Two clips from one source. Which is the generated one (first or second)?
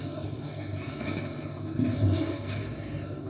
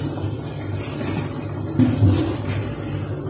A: first